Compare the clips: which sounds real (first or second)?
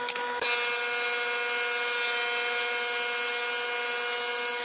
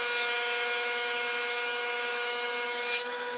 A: first